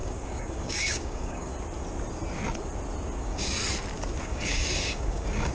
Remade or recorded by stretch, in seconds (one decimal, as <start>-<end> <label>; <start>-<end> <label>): 0.0-1.5 remade; 1.5-3.2 recorded; 3.2-3.6 remade; 3.6-4.2 recorded; 4.2-5.5 remade